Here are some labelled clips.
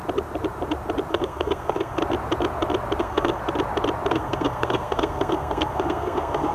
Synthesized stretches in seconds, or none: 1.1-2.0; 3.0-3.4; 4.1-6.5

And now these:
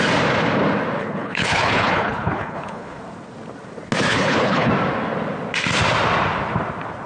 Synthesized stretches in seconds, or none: 1.0-3.0; 4.1-4.7